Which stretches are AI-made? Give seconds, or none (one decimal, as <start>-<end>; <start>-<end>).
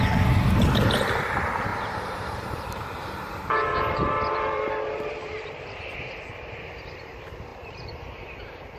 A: 1.7-6.1